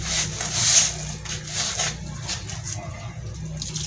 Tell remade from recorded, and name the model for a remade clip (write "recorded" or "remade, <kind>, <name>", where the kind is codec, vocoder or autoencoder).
recorded